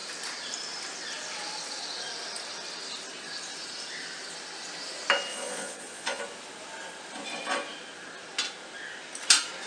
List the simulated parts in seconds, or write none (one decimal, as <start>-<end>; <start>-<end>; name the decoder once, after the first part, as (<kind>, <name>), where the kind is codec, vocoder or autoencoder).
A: 5.3-6.2 (vocoder, Vocos)